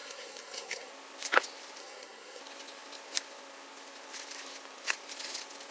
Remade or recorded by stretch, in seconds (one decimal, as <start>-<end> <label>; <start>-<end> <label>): 0.0-0.9 remade; 0.9-1.8 recorded; 1.8-2.4 remade; 2.4-5.7 recorded